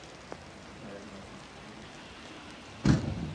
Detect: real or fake real